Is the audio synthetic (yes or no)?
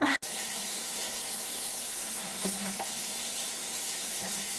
yes